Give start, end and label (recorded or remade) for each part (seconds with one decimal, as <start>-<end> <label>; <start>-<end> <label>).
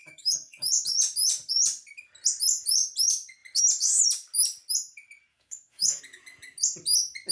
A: 0.0-0.7 remade; 0.7-5.3 recorded; 5.3-6.0 remade; 6.0-7.3 recorded